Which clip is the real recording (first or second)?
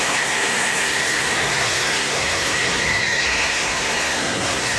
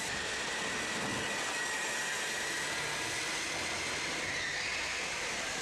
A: second